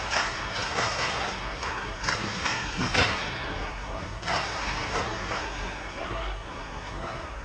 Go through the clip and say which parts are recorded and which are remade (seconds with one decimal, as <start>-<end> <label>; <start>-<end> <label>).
0.0-7.4 remade